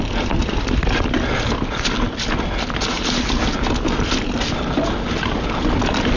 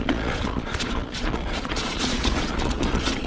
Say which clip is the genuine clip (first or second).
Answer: first